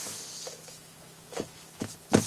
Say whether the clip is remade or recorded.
remade